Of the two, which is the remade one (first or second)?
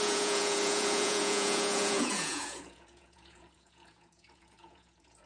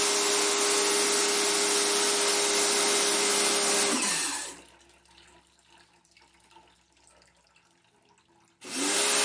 first